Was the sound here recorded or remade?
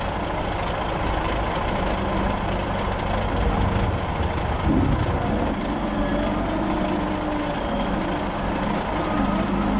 recorded